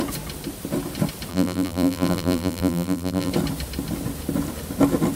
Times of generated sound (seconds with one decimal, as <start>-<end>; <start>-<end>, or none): 1.3-3.3